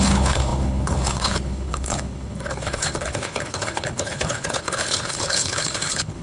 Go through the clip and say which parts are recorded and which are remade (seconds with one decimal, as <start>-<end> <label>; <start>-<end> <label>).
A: 0.0-6.2 remade